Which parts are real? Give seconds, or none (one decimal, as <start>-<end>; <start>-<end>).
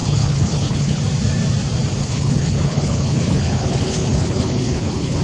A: 1.0-2.0